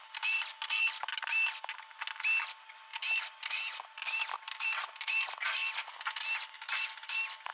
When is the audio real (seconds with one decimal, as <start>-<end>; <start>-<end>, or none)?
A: 0.0-7.5